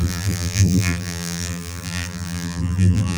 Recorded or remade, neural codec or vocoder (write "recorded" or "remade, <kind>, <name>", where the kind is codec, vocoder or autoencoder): remade, vocoder, BigVGAN v2